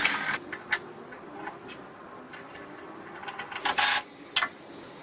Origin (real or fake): real